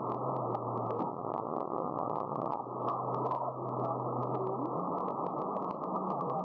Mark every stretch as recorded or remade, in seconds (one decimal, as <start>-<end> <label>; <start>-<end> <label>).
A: 0.0-1.1 recorded; 1.1-2.6 remade; 2.6-6.4 recorded